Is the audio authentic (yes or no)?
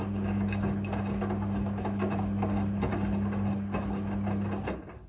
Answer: yes